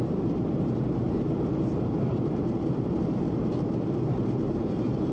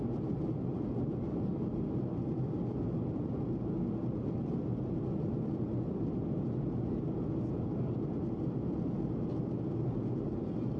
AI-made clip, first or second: first